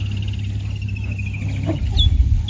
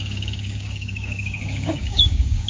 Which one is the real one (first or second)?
first